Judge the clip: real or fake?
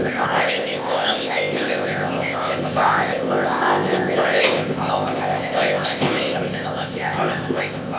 fake